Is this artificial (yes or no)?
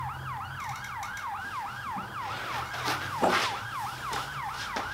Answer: no